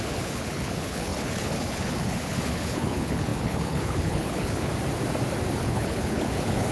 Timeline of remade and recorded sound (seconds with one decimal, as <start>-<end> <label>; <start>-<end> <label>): 0.0-4.7 remade; 4.7-5.6 recorded; 5.6-6.7 remade